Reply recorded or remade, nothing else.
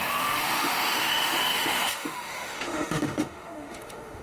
remade